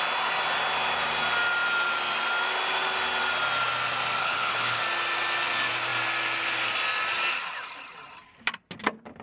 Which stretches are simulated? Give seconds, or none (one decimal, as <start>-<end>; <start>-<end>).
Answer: 4.2-4.8